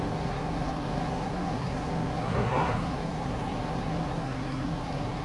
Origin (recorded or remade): remade